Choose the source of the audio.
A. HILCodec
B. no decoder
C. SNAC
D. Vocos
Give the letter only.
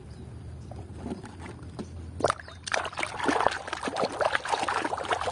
B